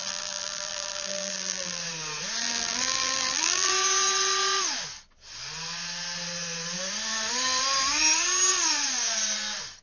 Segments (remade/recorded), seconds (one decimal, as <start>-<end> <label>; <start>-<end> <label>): 0.0-1.8 remade; 1.8-2.4 recorded; 2.4-3.7 remade; 3.7-9.8 recorded